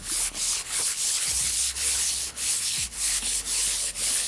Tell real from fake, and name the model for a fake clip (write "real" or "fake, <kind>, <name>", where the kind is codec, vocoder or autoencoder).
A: fake, codec, HILCodec